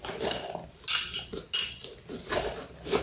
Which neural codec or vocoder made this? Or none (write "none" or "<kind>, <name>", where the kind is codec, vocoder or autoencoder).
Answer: none